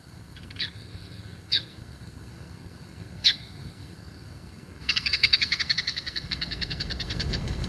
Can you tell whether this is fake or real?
fake